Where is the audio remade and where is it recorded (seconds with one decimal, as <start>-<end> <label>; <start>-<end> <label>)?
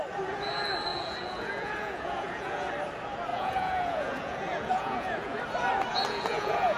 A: 0.0-0.9 recorded; 0.9-2.7 remade; 2.7-3.3 recorded; 3.3-5.4 remade; 5.4-5.9 recorded; 5.9-6.8 remade